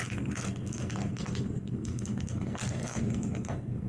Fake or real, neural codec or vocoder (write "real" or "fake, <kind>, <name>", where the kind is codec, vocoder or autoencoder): fake, codec, SNAC